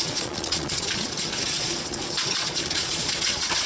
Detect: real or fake fake